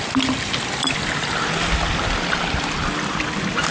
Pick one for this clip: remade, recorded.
recorded